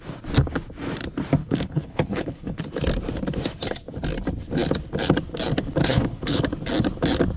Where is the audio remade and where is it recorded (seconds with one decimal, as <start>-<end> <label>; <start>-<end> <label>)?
0.0-1.4 recorded; 1.4-2.6 remade; 2.6-5.8 recorded; 5.8-6.4 remade; 6.4-7.4 recorded